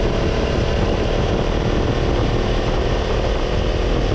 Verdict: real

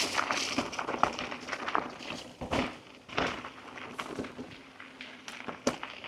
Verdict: real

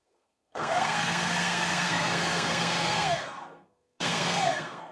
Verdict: fake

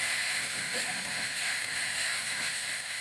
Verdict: fake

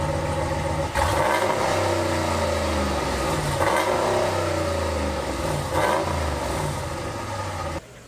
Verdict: real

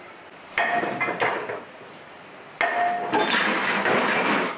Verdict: real